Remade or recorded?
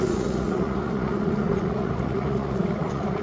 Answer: remade